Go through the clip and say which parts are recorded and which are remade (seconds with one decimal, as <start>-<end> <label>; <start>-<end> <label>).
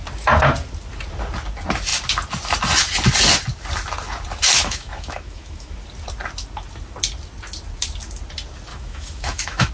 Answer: 0.0-4.6 recorded; 4.6-5.7 remade; 5.7-8.7 recorded; 8.7-9.7 remade